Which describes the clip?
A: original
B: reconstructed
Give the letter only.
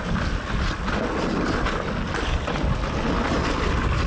A